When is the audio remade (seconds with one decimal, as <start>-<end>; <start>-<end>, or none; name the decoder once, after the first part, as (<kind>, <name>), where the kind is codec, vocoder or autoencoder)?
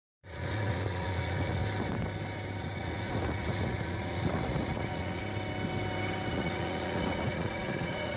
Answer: 0.0-1.6 (vocoder, Vocos); 2.6-5.2; 6.3-8.2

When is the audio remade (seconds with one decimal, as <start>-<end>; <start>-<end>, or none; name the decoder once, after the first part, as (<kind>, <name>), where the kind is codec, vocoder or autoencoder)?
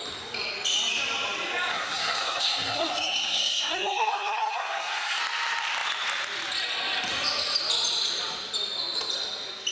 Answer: 1.7-5.2 (codec, SNAC)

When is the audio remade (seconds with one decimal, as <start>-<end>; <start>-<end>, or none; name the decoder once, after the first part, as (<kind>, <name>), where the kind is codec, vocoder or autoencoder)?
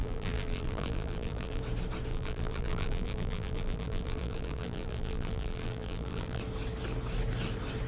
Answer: 0.0-1.6 (vocoder, BigVGAN v2); 2.1-6.4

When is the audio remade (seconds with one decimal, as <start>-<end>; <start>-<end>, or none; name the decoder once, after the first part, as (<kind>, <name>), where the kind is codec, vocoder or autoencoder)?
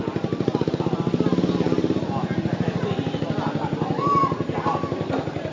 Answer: none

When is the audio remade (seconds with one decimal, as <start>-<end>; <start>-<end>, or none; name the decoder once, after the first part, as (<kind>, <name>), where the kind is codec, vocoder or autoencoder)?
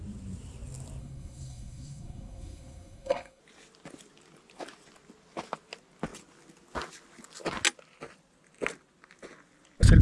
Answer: 1.0-3.4 (codec, SNAC)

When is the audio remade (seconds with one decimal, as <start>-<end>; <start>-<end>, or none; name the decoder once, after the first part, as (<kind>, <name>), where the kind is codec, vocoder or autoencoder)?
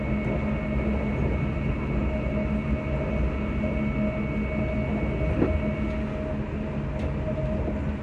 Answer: none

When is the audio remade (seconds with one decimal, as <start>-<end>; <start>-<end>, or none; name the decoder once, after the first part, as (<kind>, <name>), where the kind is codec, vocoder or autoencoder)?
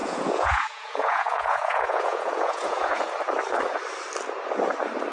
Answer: 0.0-3.1 (vocoder, Vocos)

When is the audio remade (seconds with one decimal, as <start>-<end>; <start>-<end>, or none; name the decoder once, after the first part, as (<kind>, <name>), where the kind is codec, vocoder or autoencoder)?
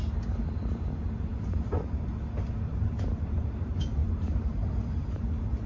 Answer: 0.0-1.3 (vocoder, BigVGAN v2); 2.7-5.7